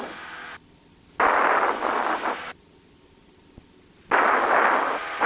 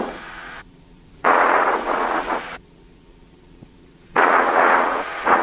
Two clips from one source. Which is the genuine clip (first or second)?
first